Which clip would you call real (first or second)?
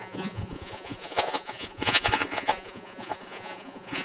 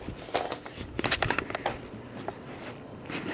second